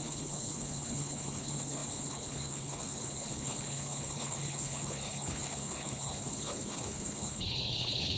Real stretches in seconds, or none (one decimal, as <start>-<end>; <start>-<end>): none